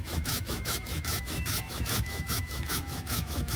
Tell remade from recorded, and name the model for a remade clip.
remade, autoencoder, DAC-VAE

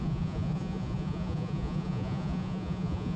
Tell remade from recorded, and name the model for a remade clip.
remade, vocoder, Vocos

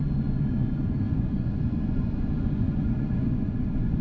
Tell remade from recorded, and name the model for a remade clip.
remade, vocoder, Vocos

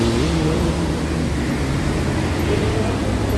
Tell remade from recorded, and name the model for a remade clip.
recorded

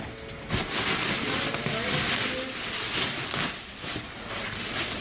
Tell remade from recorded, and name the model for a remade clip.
recorded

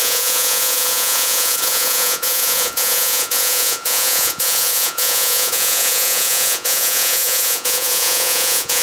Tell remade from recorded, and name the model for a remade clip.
remade, vocoder, Vocos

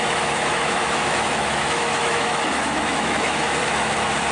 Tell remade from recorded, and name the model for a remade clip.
remade, autoencoder, DAC-VAE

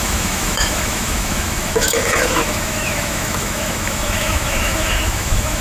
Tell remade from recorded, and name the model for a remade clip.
remade, autoencoder, DAC-VAE